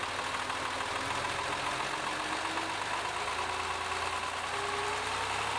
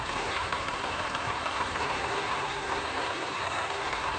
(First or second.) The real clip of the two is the first